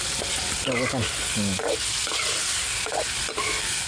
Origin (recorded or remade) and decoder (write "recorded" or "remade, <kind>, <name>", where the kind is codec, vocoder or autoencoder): recorded